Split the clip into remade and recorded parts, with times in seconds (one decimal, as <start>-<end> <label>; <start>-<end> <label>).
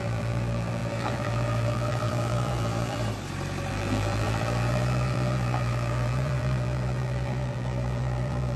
0.0-3.0 remade; 3.0-3.7 recorded; 3.7-8.6 remade